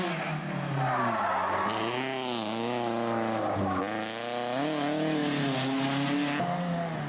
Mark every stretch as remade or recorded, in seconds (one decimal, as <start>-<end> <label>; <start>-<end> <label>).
0.0-7.1 recorded